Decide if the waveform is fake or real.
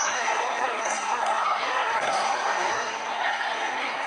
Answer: fake